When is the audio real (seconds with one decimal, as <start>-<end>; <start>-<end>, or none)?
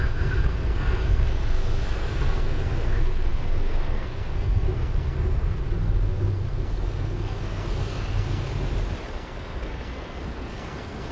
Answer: 8.5-9.1